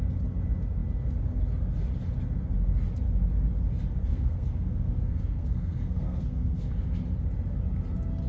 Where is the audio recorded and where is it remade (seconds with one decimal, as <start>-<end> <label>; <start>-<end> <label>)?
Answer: 0.0-4.1 recorded; 4.1-6.6 remade; 6.6-8.3 recorded